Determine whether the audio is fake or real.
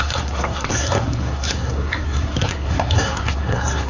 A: fake